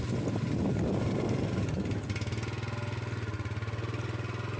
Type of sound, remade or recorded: recorded